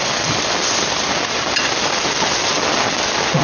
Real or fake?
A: real